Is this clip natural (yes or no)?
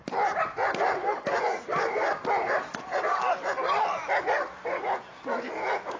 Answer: yes